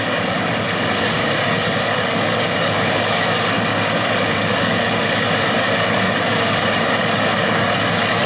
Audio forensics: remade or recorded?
remade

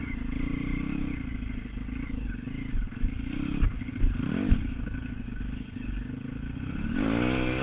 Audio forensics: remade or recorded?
recorded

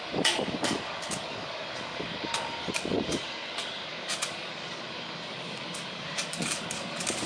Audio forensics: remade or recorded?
remade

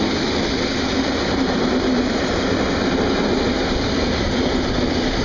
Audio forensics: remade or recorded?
recorded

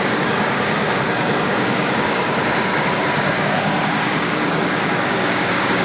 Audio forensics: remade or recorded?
remade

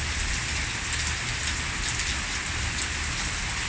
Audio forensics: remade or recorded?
recorded